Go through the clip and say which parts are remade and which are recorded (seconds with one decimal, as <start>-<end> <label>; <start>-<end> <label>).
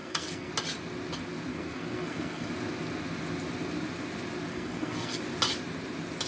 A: 0.0-0.5 remade; 0.5-1.5 recorded; 1.5-2.5 remade; 2.5-4.5 recorded; 4.5-5.2 remade; 5.2-6.3 recorded